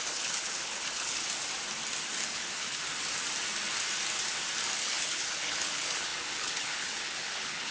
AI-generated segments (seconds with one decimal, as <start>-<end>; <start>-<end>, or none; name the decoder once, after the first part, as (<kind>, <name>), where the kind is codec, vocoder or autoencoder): 0.0-1.2 (codec, HILCodec); 2.2-2.9; 4.8-7.7